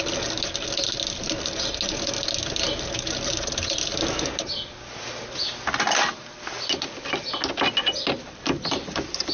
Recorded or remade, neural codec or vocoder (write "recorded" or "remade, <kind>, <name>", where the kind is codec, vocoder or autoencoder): recorded